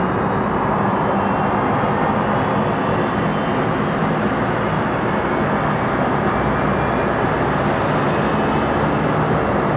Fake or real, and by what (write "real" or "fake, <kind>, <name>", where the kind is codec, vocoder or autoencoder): real